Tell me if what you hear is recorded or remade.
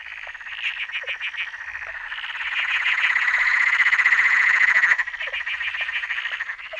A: recorded